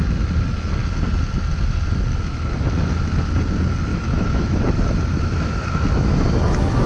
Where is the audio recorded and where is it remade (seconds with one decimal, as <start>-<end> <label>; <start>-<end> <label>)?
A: 0.0-3.9 recorded; 3.9-4.6 remade; 4.6-6.9 recorded